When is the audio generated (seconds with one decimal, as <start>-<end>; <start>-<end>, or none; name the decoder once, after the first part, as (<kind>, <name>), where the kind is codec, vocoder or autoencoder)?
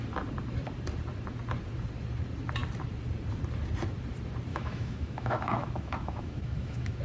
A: 4.5-7.0 (autoencoder, DAC-VAE)